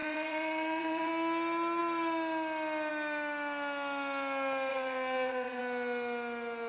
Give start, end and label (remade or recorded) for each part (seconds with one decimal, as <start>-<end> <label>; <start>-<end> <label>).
0.0-1.1 remade; 1.1-4.7 recorded; 4.7-5.6 remade; 5.6-6.7 recorded